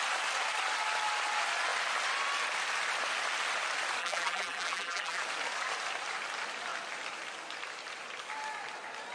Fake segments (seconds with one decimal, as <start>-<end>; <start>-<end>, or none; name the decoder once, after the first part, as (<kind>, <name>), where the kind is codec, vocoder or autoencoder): 4.0-5.2 (vocoder, BigVGAN v2)